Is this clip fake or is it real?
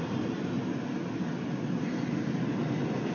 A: real